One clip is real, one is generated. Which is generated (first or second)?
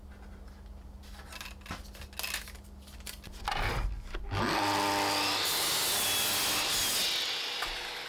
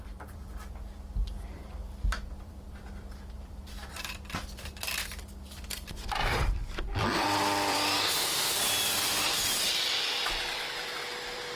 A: second